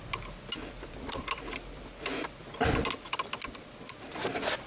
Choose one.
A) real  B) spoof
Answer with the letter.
A